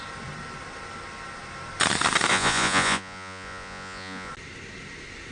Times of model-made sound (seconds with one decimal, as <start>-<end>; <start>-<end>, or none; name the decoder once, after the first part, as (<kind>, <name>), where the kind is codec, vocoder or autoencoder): 2.3-4.3 (vocoder, Vocos)

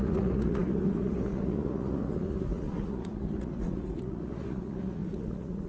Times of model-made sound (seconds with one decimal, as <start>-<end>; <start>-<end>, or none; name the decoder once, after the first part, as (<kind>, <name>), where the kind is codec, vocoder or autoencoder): 0.0-5.7 (vocoder, Vocos)